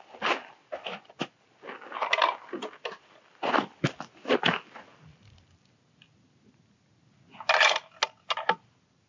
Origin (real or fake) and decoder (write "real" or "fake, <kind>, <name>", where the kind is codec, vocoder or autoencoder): real